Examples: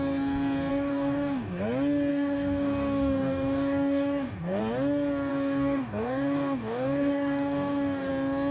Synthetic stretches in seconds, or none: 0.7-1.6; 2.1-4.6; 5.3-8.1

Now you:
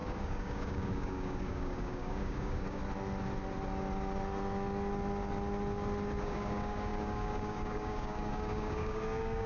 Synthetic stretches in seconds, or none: 0.0-2.8; 6.2-9.5